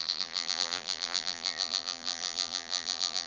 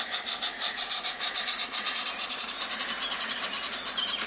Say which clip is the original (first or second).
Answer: second